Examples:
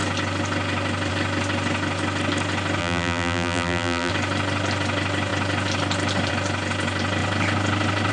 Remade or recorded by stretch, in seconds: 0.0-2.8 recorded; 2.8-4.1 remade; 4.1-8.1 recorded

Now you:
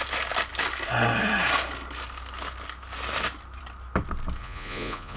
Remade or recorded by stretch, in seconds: 0.0-4.4 recorded; 4.4-5.2 remade

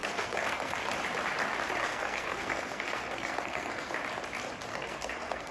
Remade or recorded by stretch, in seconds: 0.0-0.9 remade; 0.9-1.8 recorded; 1.8-3.9 remade; 3.9-4.7 recorded; 4.7-5.5 remade

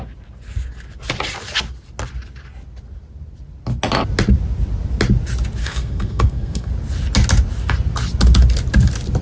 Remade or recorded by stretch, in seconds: 0.0-5.6 recorded; 5.6-6.7 remade; 6.7-9.2 recorded

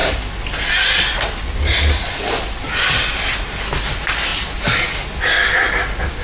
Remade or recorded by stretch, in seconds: 0.0-6.2 recorded

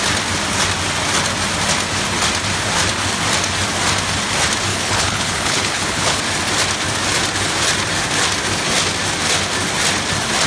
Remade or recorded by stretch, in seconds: 0.0-4.7 recorded; 4.7-6.2 remade; 6.2-10.5 recorded

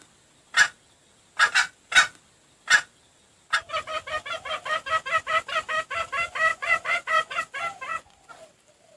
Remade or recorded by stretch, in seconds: 0.0-6.5 recorded; 6.5-7.4 remade; 7.4-7.9 recorded; 7.9-8.5 remade; 8.5-9.0 recorded